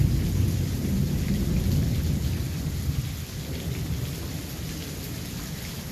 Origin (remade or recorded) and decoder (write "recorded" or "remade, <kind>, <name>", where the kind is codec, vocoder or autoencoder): recorded